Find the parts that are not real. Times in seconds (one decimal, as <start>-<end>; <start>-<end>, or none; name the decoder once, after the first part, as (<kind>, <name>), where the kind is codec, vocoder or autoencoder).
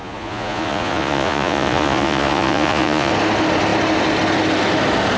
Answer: 0.0-3.1 (vocoder, Vocos)